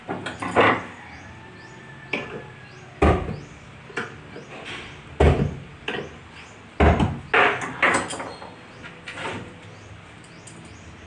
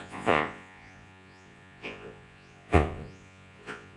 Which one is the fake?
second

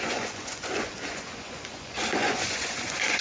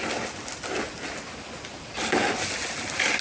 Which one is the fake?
first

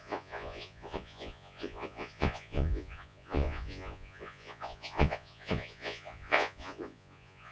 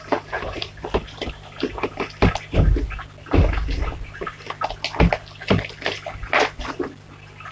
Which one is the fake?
first